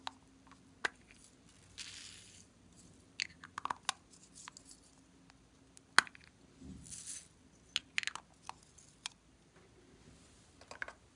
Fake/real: real